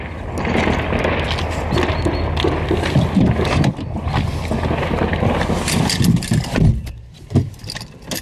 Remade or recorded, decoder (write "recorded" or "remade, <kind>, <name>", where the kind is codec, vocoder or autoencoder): recorded